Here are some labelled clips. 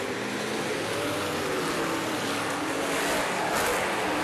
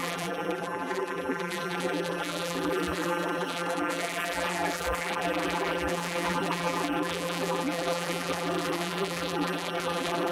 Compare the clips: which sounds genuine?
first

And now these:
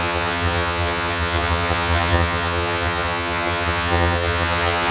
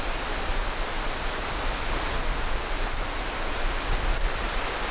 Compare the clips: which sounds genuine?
second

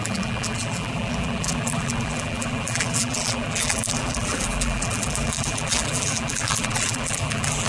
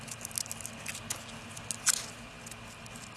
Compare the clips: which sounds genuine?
second